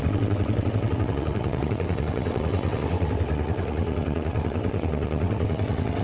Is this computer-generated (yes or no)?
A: yes